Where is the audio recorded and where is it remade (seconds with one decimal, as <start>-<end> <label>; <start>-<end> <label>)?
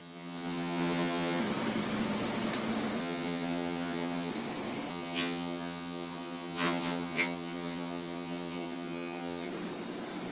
0.0-1.4 remade; 1.4-3.0 recorded; 3.0-4.3 remade; 4.3-4.9 recorded; 4.9-9.5 remade; 9.5-10.3 recorded